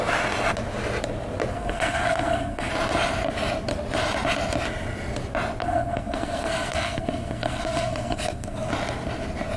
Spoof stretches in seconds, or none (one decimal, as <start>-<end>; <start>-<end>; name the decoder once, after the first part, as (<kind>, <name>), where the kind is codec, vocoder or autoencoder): 1.5-2.7 (codec, SNAC); 5.6-8.7